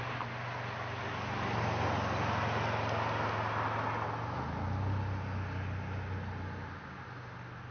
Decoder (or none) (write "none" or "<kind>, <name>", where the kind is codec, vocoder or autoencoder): none